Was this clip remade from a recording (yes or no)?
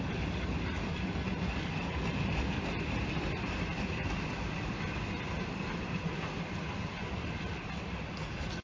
no